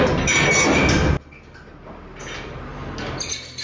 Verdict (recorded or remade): recorded